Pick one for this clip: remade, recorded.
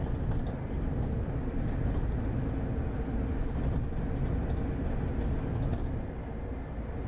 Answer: recorded